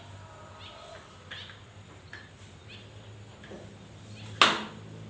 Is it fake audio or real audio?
real